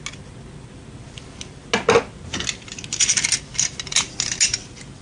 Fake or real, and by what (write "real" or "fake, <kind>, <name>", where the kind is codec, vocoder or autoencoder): real